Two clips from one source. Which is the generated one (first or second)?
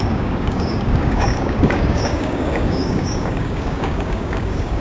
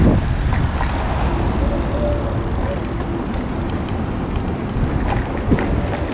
first